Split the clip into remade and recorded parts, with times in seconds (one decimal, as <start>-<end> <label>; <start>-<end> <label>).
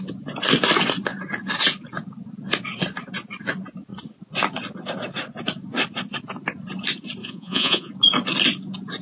0.0-7.2 recorded; 7.2-7.9 remade; 7.9-9.0 recorded